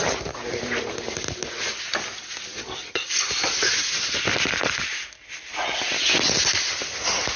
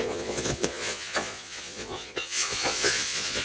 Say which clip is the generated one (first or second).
second